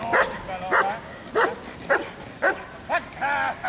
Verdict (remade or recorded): recorded